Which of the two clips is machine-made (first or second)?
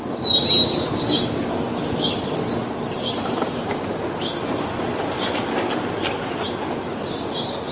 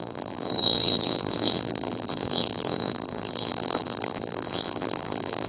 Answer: second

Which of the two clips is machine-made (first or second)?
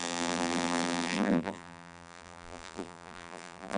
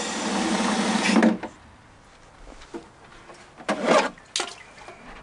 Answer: first